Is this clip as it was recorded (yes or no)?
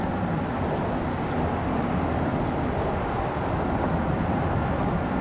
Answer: yes